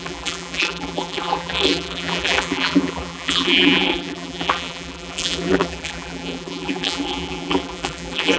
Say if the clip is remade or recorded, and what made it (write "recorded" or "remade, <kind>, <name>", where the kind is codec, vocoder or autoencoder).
remade, vocoder, BigVGAN v2